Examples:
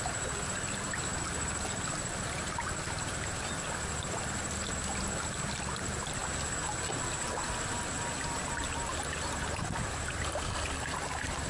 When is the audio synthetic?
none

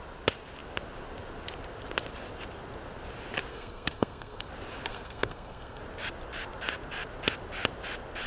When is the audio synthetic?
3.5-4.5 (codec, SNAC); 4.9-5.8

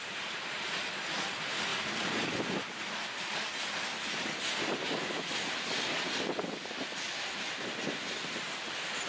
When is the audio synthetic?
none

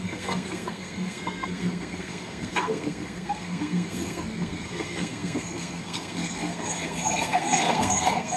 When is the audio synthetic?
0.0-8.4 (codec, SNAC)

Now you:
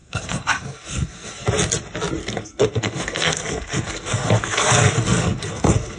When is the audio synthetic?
0.0-1.5 (codec, SNAC); 2.2-6.0

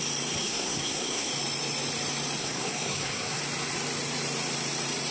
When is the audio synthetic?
0.4-1.3 (codec, SNAC); 2.4-3.4

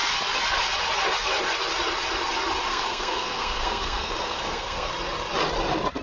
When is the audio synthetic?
2.7-4.9 (codec, SNAC)

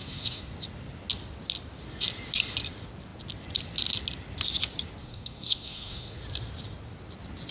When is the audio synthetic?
0.0-0.5 (codec, SNAC); 5.0-6.2